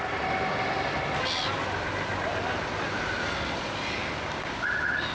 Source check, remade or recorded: recorded